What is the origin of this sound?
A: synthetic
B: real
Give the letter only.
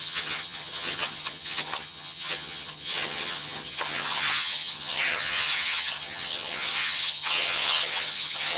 A